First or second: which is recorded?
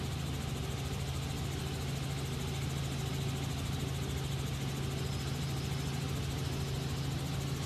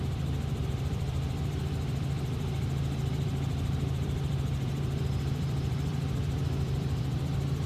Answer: first